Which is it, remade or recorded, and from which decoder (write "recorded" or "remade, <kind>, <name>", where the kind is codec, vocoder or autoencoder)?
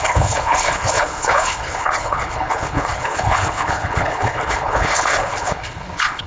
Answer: remade, codec, HILCodec